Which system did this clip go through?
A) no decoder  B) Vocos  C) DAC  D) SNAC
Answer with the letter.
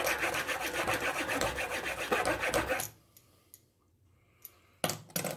A